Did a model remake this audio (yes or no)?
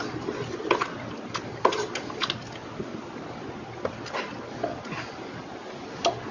no